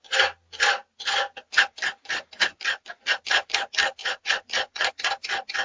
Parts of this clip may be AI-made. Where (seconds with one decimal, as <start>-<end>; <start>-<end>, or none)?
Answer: 4.0-4.9